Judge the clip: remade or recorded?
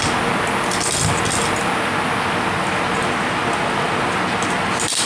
recorded